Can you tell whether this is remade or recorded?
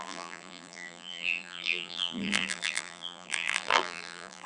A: remade